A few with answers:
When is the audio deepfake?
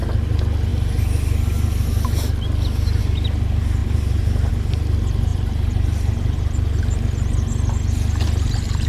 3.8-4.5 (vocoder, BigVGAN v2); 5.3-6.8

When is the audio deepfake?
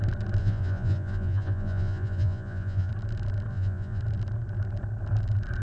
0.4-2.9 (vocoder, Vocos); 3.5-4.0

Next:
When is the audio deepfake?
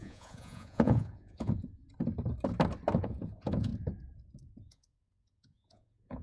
0.0-1.8 (vocoder, Vocos); 3.0-3.7; 4.7-6.2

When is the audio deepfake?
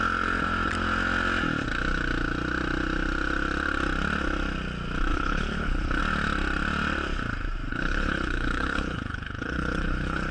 5.1-6.0 (codec, HILCodec); 7.7-10.3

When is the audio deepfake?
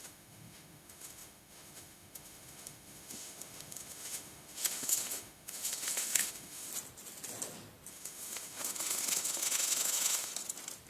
0.0-6.7 (autoencoder, DAC-VAE); 7.9-10.3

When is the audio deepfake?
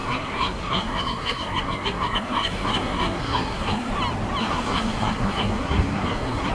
0.0-3.9 (codec, SNAC); 4.4-6.5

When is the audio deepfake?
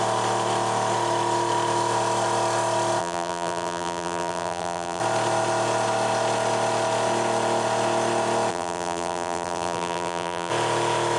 3.0-5.0 (vocoder, BigVGAN v2); 8.5-10.5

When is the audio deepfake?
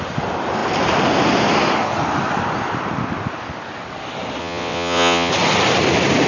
4.4-5.3 (vocoder, WaveNeXt)